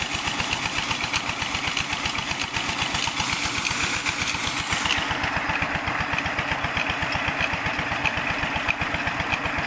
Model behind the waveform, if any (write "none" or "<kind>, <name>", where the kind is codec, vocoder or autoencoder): none